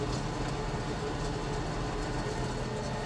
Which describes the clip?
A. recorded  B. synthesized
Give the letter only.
A